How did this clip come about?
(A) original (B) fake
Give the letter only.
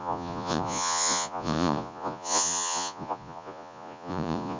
B